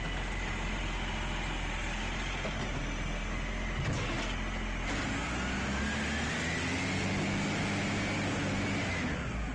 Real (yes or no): yes